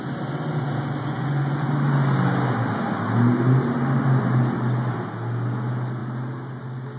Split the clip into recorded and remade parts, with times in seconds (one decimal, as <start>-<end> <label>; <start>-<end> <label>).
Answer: 0.0-1.1 recorded; 1.1-1.7 remade; 1.7-7.0 recorded